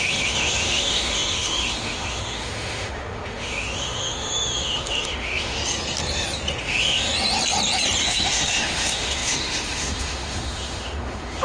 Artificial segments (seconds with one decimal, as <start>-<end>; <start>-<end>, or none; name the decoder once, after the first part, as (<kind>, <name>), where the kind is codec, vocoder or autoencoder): 0.0-5.6 (autoencoder, DAC-VAE); 6.6-7.1; 8.0-11.4